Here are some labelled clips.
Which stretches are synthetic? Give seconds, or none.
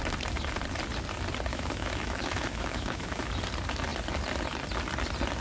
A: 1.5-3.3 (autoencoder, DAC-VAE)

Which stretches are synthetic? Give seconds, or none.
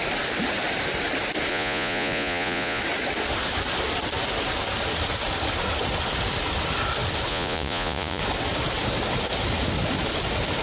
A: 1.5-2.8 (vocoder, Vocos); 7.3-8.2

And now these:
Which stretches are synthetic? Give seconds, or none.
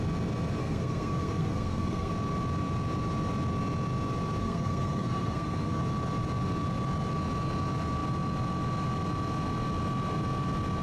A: 0.6-2.1 (codec, SNAC); 4.4-5.8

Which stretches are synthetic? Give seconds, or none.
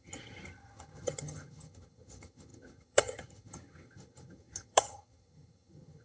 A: 0.0-6.0 (vocoder, HiFi-GAN)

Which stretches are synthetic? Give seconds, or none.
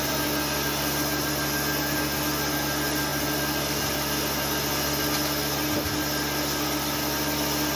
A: none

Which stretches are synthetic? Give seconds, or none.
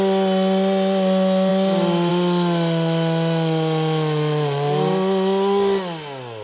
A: none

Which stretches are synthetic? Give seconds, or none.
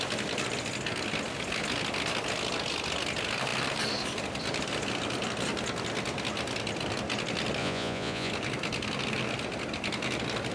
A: 7.6-8.3 (vocoder, Vocos)